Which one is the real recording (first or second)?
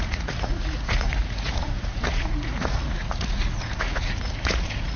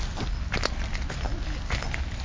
second